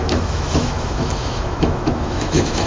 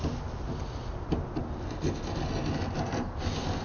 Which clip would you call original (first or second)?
second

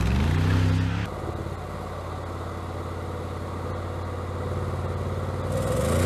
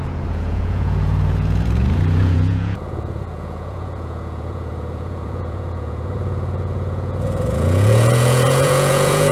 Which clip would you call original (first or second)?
first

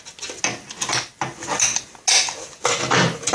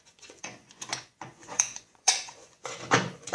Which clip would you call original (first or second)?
first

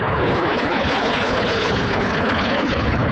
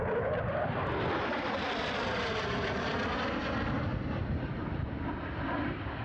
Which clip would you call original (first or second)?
second